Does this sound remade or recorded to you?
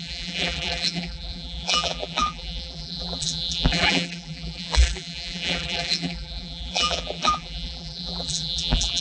remade